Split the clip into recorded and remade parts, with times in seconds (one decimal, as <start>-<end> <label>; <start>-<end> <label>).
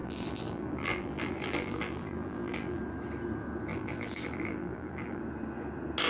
0.0-2.8 remade; 2.8-3.7 recorded; 3.7-5.2 remade; 5.2-6.1 recorded